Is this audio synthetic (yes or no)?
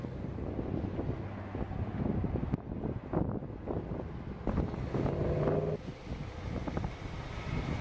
no